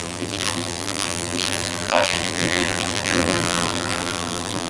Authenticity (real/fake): fake